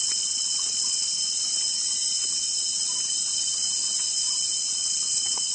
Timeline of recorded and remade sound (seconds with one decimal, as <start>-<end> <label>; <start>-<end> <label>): 0.0-1.4 remade; 1.4-4.7 recorded; 4.7-5.5 remade